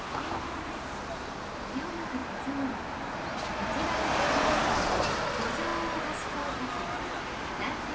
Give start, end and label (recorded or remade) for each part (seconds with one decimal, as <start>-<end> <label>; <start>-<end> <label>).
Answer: 0.0-7.9 recorded